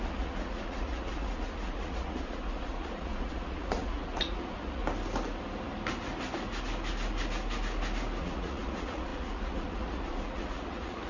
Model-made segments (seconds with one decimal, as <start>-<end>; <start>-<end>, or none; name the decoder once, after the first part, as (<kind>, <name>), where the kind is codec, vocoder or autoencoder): 0.0-4.8 (vocoder, Vocos); 8.2-11.1